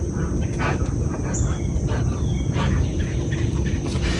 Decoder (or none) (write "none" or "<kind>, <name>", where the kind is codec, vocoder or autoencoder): none